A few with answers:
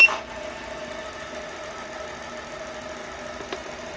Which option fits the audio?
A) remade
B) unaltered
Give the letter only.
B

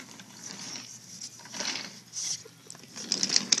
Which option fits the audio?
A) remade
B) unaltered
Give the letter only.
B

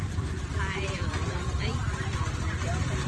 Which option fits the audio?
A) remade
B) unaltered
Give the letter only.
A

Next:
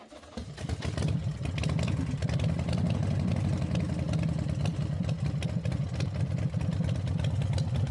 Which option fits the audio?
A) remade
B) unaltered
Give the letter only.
B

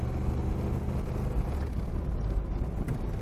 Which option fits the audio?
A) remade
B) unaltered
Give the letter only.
B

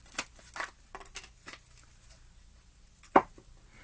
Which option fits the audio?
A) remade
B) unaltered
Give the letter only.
B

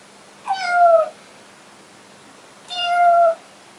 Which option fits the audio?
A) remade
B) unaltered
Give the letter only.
B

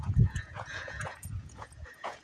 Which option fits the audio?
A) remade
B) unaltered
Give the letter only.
A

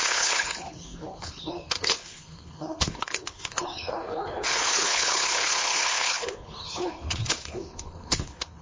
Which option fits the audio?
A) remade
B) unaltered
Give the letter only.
A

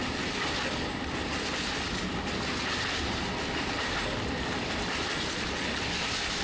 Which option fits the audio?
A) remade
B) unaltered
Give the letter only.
B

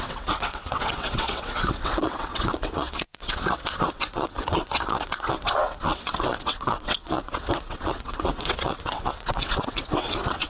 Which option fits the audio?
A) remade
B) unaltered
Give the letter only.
A